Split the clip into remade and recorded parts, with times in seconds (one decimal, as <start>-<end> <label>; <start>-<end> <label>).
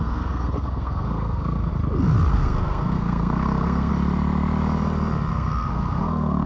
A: 0.0-1.7 remade; 1.7-2.3 recorded; 2.3-3.9 remade; 3.9-5.3 recorded; 5.3-6.5 remade